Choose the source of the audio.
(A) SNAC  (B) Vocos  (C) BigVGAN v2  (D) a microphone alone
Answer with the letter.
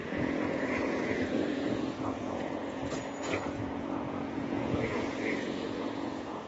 B